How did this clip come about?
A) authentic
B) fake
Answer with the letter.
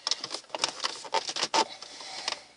A